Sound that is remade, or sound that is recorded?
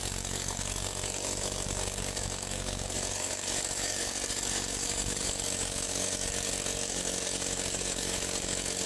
remade